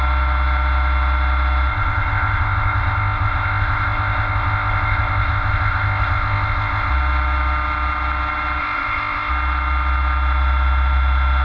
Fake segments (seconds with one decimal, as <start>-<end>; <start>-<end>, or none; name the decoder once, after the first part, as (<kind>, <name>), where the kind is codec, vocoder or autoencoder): 1.7-6.9 (codec, ZipCodec); 8.6-9.3